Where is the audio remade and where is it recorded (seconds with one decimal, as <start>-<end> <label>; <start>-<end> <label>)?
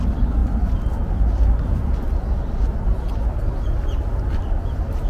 0.0-5.1 recorded